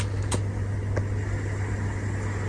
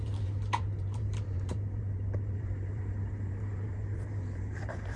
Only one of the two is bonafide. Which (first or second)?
first